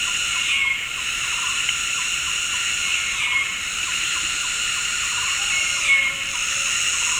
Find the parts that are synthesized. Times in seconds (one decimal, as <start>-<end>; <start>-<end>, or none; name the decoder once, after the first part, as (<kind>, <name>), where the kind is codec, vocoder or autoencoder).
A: 4.9-5.5 (vocoder, BigVGAN v2)